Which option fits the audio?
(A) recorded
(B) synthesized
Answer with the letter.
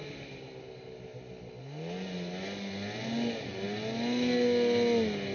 A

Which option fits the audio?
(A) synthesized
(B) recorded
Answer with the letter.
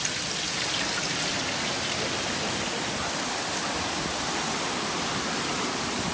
B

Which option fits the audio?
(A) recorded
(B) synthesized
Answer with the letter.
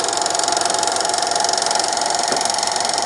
A